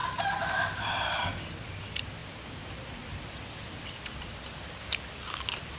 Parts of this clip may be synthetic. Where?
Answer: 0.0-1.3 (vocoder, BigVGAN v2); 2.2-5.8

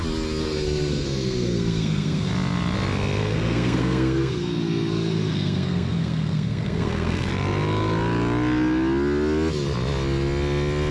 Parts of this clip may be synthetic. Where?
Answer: 0.4-2.3 (codec, SNAC); 3.2-7.3

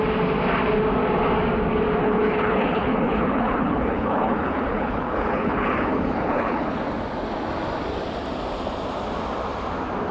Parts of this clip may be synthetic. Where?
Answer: 2.0-6.8 (codec, HILCodec)

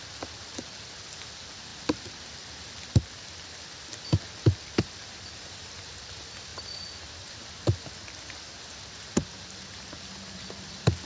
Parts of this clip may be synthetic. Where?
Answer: none

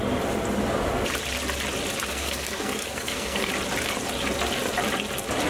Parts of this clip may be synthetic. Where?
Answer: 2.1-3.5 (codec, SNAC)

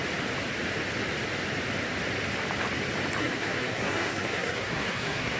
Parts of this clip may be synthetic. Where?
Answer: 3.2-5.4 (codec, SNAC)

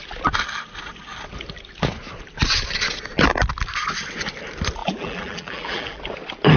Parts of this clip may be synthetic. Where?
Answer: 4.8-6.0 (vocoder, BigVGAN v2)